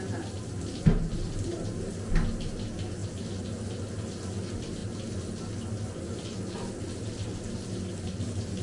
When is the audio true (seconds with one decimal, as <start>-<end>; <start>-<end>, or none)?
0.0-8.6